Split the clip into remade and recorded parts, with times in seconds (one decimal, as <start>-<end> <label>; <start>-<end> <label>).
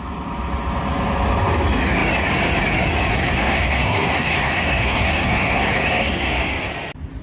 0.0-3.1 recorded; 3.1-6.7 remade; 6.7-7.2 recorded